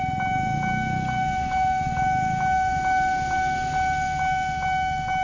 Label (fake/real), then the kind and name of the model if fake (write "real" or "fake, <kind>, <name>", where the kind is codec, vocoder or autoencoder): real